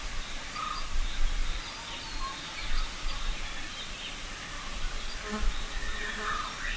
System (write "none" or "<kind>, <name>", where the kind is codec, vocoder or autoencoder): none